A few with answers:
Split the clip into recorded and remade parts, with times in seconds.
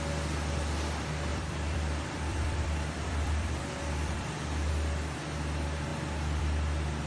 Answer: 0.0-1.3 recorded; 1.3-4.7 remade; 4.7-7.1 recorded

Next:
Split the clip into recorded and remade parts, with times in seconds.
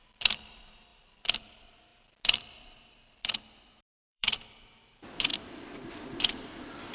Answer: 0.0-6.9 remade